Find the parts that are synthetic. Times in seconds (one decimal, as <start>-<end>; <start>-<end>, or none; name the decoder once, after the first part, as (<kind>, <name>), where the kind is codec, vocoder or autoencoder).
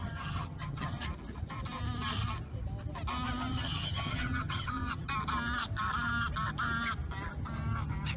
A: 0.0-1.0 (vocoder, HiFi-GAN); 3.5-5.1